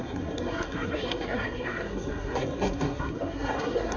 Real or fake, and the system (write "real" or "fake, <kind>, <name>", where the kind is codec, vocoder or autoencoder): fake, codec, SNAC